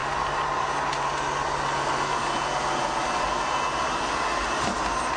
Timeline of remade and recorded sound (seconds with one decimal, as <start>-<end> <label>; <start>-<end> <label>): 0.0-5.2 recorded